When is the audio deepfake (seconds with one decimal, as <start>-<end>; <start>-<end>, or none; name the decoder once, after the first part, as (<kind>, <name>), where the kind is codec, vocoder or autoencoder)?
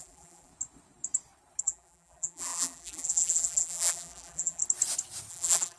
0.0-0.5 (vocoder, BigVGAN v2); 1.6-4.6; 5.3-5.8